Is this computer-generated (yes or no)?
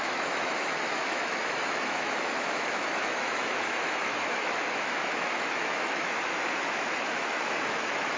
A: yes